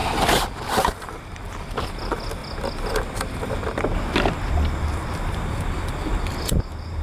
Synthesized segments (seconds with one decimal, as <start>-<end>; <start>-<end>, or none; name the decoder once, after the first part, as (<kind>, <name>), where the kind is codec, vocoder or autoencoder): 0.0-1.9 (vocoder, BigVGAN v2); 2.4-6.6